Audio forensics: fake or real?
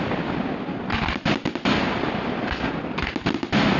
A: real